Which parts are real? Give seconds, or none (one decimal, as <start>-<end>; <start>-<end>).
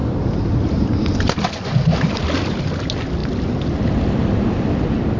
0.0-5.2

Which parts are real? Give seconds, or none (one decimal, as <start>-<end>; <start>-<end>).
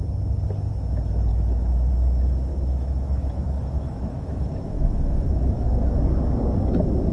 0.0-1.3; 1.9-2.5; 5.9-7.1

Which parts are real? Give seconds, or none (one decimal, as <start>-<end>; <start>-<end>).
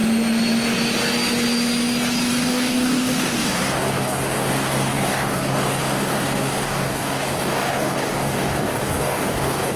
0.0-2.3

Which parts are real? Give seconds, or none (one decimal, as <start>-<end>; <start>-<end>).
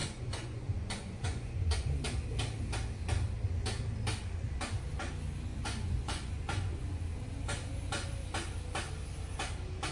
1.9-5.5; 7.0-9.9